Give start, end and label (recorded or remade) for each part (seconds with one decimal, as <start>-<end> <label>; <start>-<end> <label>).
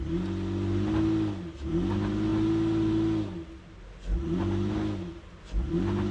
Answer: 0.0-6.1 recorded